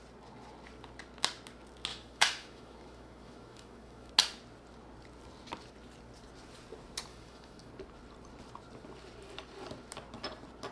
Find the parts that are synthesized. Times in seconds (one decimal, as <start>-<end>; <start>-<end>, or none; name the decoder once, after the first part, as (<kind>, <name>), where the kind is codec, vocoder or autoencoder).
1.9-4.1 (autoencoder, DAC-VAE); 7.1-7.7